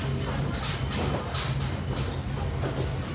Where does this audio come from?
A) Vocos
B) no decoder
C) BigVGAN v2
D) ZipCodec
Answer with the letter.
B